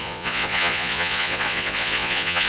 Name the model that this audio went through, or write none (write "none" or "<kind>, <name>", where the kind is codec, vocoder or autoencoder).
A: vocoder, Vocos